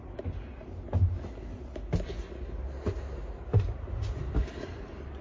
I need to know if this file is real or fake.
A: real